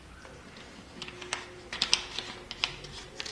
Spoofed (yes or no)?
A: no